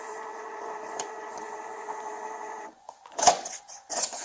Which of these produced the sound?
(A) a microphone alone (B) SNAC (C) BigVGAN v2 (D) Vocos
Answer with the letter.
D